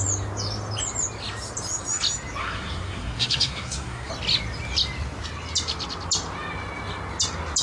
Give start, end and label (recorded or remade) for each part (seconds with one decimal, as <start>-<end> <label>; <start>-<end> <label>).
0.0-2.4 recorded; 2.4-4.1 remade; 4.1-7.6 recorded